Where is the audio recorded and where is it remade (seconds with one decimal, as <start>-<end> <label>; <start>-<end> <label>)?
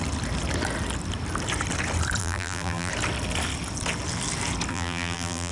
0.0-2.2 recorded; 2.2-2.9 remade; 2.9-4.7 recorded; 4.7-5.5 remade